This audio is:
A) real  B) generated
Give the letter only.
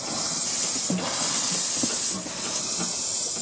A